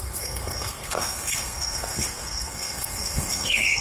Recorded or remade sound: remade